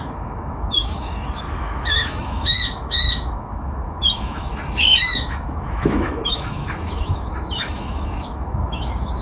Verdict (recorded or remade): remade